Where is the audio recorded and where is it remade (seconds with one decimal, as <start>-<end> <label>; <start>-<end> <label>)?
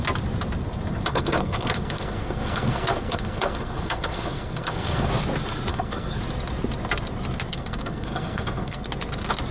0.0-1.1 recorded; 1.1-5.1 remade; 5.1-5.7 recorded; 5.7-6.2 remade; 6.2-7.5 recorded; 7.5-8.9 remade; 8.9-9.5 recorded